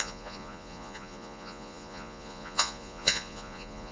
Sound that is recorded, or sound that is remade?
remade